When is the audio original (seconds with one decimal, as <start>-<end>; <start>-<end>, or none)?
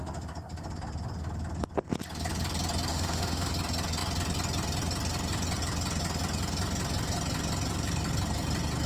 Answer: 0.0-2.9; 3.5-8.9